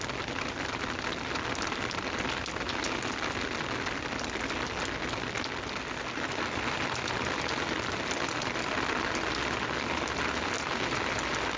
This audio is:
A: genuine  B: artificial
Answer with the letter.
A